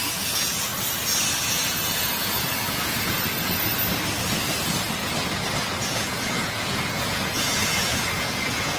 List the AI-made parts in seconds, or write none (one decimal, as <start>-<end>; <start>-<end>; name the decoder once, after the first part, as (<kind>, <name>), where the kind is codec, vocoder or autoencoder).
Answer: 0.0-0.7 (vocoder, Vocos); 1.3-3.7; 5.8-8.8